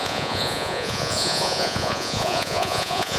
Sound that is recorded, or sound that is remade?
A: remade